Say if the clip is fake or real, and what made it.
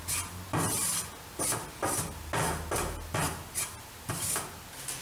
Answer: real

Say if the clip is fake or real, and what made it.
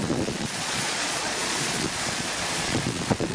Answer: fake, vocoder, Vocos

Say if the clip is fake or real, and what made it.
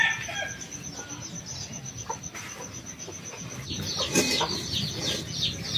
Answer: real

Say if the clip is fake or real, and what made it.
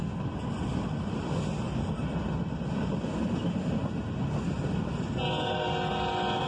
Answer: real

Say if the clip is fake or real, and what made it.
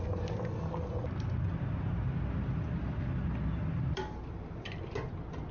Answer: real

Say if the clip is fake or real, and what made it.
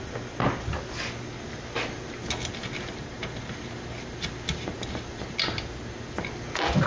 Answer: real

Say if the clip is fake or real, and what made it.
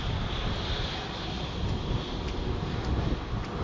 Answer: real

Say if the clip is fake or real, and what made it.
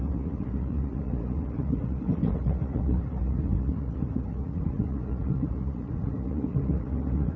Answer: fake, vocoder, Vocos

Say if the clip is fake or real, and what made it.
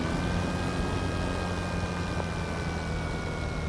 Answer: real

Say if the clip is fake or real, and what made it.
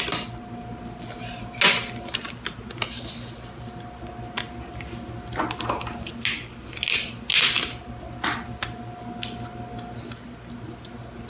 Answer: real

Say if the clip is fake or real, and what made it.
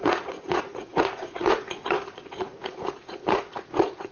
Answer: fake, vocoder, Vocos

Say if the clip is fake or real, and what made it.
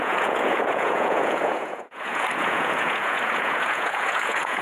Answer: fake, vocoder, Vocos